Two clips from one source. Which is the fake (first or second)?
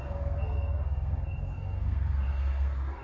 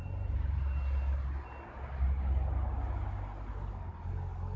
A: first